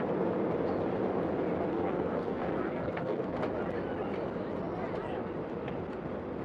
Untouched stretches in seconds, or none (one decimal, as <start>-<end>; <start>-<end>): 0.0-1.7; 3.4-6.4